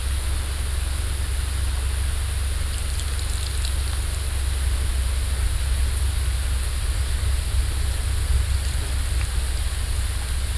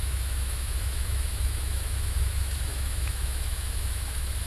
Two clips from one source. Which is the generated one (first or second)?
second